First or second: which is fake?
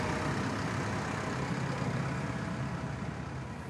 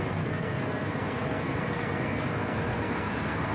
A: second